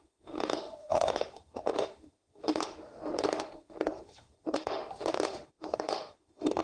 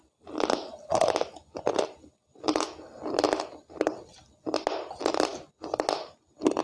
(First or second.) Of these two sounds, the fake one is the first